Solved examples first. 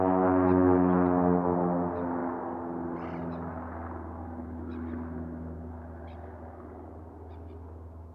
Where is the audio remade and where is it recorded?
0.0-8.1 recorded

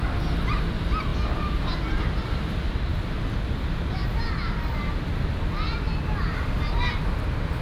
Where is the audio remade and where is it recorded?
0.0-7.6 recorded

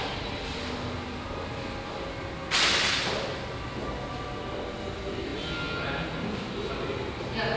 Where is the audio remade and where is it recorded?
0.0-7.6 recorded

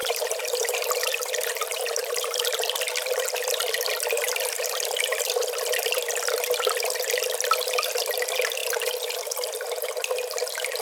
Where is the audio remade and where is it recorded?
0.0-2.6 remade; 2.6-8.6 recorded; 8.6-9.5 remade; 9.5-10.8 recorded